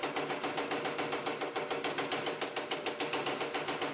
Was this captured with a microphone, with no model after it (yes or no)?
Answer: yes